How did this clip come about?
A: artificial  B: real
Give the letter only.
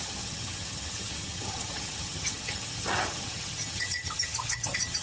A